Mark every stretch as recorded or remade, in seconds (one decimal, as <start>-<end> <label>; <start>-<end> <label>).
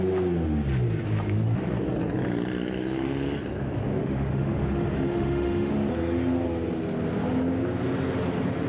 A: 0.0-4.0 recorded; 4.0-5.7 remade; 5.7-8.7 recorded